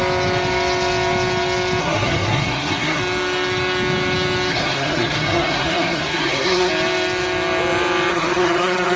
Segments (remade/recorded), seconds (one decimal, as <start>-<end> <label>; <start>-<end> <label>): 0.0-1.8 recorded; 1.8-3.0 remade; 3.0-4.5 recorded; 4.5-6.7 remade; 6.7-8.1 recorded; 8.1-9.0 remade